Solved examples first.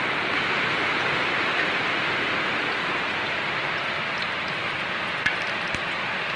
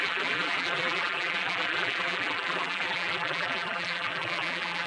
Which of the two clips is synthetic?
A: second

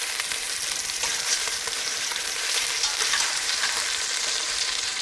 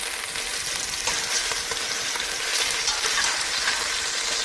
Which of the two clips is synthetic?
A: first